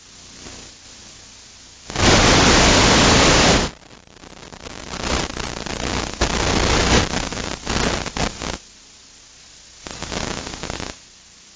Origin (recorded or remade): recorded